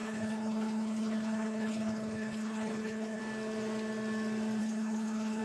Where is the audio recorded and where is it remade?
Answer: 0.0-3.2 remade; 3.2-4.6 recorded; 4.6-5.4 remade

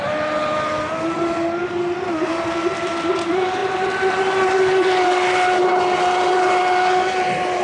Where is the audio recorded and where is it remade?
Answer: 0.0-7.6 recorded

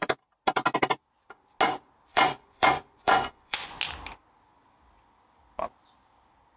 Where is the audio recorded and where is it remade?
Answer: 0.0-2.1 recorded; 2.1-3.8 remade; 3.8-6.6 recorded

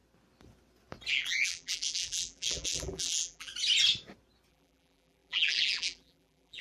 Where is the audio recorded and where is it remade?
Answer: 0.0-1.1 recorded; 1.1-3.5 remade; 3.5-4.5 recorded; 4.5-6.6 remade

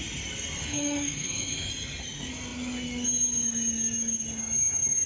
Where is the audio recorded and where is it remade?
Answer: 0.0-0.6 recorded; 0.6-1.7 remade; 1.7-5.1 recorded